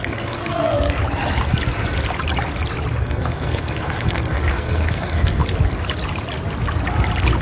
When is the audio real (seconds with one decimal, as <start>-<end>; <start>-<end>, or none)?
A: 1.0-3.0; 5.4-7.4